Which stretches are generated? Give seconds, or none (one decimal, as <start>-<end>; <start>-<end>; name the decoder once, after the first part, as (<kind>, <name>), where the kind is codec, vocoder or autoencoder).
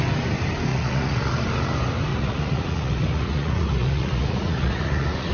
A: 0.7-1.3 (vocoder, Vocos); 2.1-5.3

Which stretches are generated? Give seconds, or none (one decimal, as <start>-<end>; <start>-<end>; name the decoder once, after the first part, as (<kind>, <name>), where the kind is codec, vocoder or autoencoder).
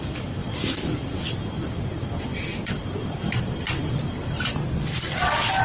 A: none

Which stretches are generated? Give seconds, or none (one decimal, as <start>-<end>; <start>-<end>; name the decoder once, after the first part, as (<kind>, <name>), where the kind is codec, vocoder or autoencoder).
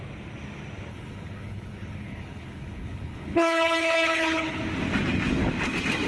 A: 0.9-4.6 (codec, HILCodec)